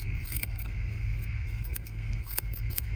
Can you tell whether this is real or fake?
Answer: fake